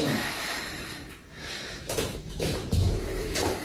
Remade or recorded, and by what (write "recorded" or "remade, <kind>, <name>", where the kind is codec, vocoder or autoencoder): remade, autoencoder, DAC-VAE